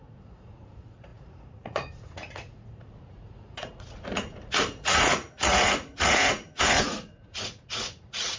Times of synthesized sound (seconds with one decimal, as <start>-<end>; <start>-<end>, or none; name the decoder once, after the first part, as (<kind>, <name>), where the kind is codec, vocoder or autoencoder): 0.0-8.4 (vocoder, Vocos)